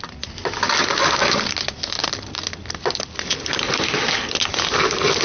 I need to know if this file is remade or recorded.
recorded